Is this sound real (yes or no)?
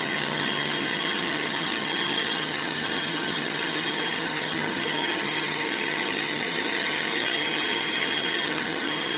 no